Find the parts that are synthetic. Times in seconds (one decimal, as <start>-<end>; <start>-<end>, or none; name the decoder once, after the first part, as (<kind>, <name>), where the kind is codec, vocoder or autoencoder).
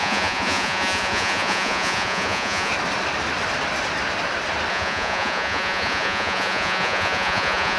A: 0.0-2.7 (vocoder, Vocos); 4.7-7.8